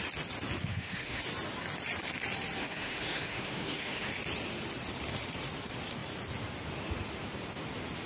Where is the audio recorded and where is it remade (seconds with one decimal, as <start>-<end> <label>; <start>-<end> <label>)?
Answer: 0.0-0.6 recorded; 0.6-1.2 remade; 1.2-2.6 recorded; 2.6-4.1 remade; 4.1-8.1 recorded